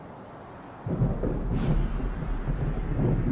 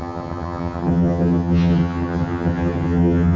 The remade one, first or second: second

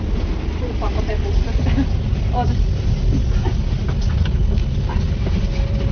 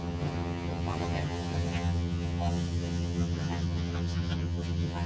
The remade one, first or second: second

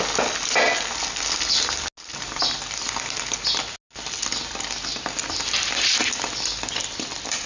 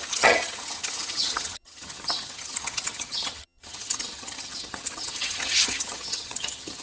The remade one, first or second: second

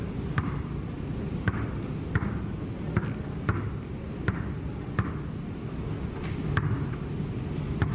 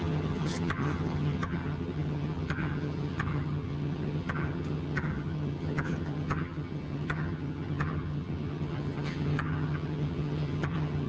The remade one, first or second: second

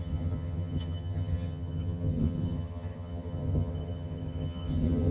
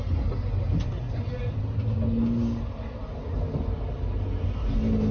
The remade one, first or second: first